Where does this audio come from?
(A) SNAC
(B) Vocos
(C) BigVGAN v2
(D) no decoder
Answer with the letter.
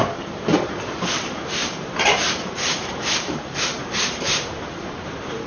C